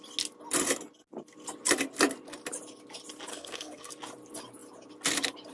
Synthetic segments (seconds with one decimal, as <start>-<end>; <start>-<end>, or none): 3.3-3.9